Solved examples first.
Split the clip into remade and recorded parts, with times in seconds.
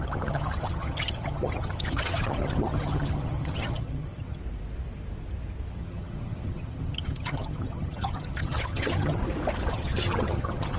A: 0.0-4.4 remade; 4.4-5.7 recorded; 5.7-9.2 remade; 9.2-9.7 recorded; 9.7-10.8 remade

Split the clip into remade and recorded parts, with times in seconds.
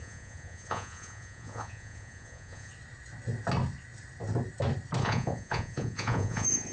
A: 0.0-2.7 remade; 2.7-5.0 recorded; 5.0-6.7 remade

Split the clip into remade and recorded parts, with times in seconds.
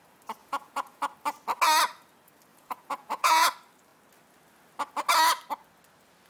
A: 0.0-0.4 recorded; 0.4-1.0 remade; 1.0-2.5 recorded; 2.5-3.5 remade; 3.5-6.3 recorded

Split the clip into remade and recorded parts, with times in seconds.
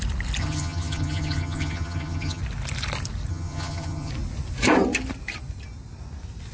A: 0.0-0.4 recorded; 0.4-2.4 remade; 2.4-3.3 recorded; 3.3-4.1 remade; 4.1-6.5 recorded